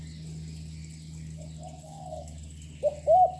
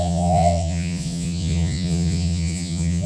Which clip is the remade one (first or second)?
second